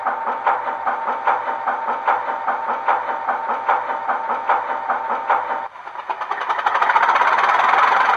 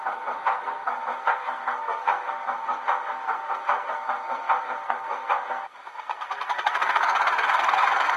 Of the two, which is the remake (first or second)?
second